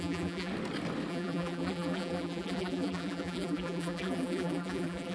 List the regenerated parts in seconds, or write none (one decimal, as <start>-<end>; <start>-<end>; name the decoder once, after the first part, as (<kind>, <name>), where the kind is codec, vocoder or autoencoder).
0.0-0.5 (vocoder, BigVGAN v2); 1.1-5.1